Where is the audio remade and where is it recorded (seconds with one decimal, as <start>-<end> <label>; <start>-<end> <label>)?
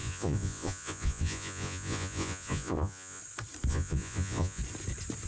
0.0-3.2 remade; 3.2-3.7 recorded; 3.7-4.6 remade; 4.6-5.3 recorded